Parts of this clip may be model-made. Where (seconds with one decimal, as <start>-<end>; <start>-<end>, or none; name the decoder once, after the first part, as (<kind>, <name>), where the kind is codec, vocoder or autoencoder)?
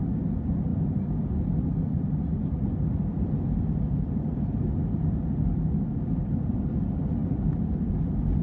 none